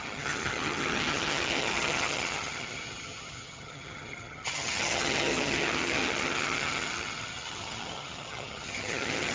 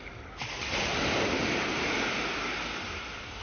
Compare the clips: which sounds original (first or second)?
second